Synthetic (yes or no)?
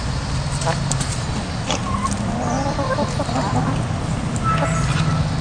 no